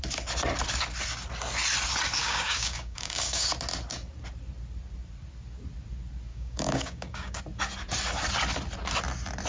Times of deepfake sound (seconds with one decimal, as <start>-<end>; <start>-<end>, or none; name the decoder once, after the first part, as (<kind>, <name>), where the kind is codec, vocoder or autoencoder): 2.2-3.5 (codec, DAC); 6.3-7.4